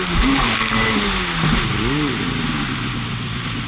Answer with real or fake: real